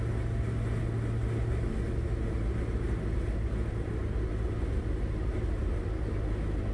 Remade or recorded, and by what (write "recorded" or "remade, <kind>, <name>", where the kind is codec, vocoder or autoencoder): recorded